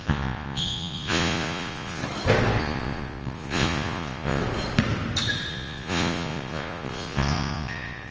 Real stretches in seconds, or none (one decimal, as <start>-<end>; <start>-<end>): 2.0-2.6; 4.4-5.5